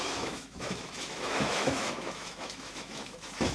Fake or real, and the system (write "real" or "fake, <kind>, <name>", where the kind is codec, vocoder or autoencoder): fake, autoencoder, DAC-VAE